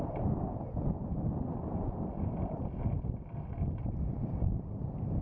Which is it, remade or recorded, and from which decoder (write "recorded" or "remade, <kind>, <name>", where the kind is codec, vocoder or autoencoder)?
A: recorded